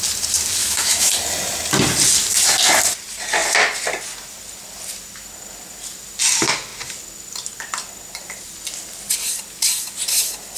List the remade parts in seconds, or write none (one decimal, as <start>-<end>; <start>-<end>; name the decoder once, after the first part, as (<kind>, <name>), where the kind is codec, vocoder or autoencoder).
0.6-1.1 (autoencoder, DAC-VAE)